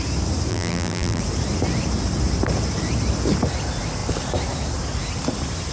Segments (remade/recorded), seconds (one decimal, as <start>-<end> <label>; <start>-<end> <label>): 0.0-0.5 recorded; 0.5-1.2 remade; 1.2-5.7 recorded